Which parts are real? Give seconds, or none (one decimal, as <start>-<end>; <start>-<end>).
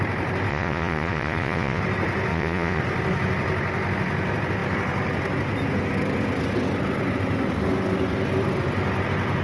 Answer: 0.0-0.5; 1.8-2.3; 2.8-9.4